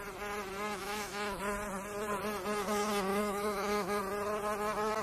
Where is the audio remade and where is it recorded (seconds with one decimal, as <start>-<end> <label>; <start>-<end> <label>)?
0.0-0.8 recorded; 0.8-1.4 remade; 1.4-3.1 recorded; 3.1-4.0 remade; 4.0-5.0 recorded